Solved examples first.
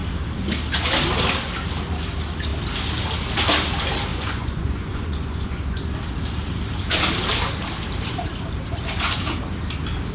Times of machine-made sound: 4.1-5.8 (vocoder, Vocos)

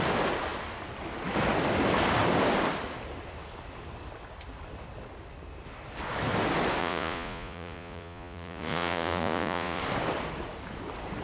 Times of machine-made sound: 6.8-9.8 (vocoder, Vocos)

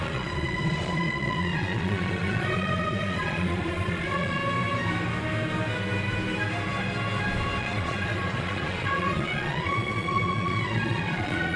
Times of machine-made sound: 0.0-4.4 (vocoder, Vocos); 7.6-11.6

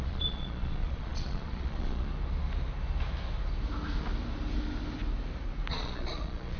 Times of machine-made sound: 0.0-2.1 (vocoder, Vocos); 5.7-6.6